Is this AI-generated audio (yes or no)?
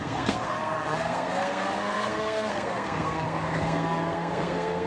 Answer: yes